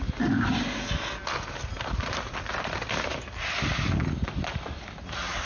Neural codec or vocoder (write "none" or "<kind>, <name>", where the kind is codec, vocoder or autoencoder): none